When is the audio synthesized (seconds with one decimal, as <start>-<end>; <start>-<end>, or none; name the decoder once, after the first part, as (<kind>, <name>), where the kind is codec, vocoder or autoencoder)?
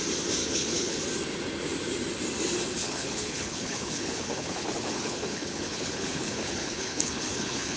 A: 0.4-1.0 (codec, HILCodec); 2.8-7.8